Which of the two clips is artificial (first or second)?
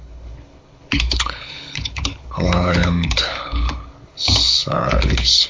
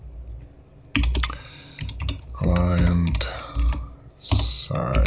first